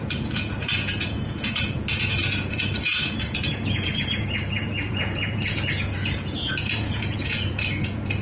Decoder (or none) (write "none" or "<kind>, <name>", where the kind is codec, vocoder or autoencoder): vocoder, Vocos